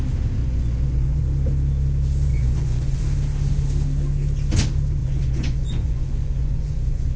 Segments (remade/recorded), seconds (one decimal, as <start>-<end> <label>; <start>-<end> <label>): 0.0-0.4 recorded; 0.4-1.2 remade; 1.2-2.3 recorded; 2.3-3.0 remade; 3.0-5.0 recorded; 5.0-7.2 remade